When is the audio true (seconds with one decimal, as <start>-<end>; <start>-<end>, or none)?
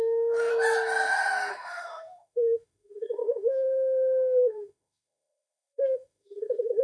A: 0.5-1.5